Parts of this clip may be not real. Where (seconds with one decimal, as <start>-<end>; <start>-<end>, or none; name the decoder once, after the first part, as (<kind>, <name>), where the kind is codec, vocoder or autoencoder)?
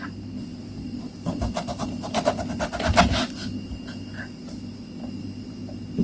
none